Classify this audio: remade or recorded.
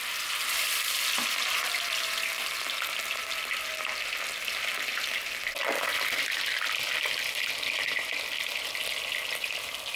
recorded